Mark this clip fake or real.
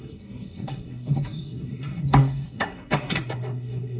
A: fake